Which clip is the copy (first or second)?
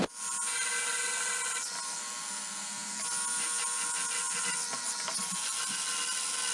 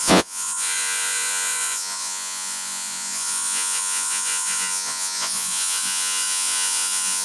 second